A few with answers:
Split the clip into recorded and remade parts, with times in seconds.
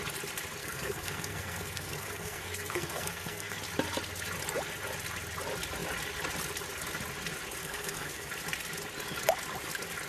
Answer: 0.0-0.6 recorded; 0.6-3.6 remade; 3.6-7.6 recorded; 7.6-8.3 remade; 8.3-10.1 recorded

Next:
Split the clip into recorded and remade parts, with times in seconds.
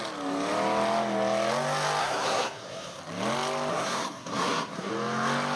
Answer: 0.0-2.0 recorded; 2.0-3.0 remade; 3.0-3.7 recorded; 3.7-4.9 remade; 4.9-5.6 recorded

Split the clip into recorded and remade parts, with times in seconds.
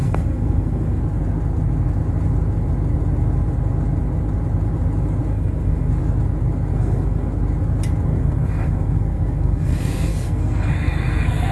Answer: 0.0-1.0 remade; 1.0-5.3 recorded; 5.3-5.9 remade; 5.9-6.7 recorded; 6.7-7.3 remade; 7.3-8.1 recorded; 8.1-11.5 remade